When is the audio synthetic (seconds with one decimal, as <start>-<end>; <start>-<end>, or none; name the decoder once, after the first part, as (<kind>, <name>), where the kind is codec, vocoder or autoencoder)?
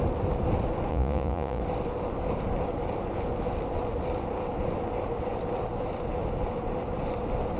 0.9-1.6 (vocoder, Vocos)